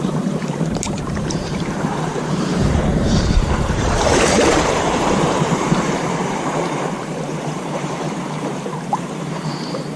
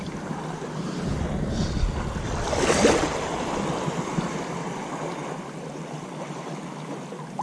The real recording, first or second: second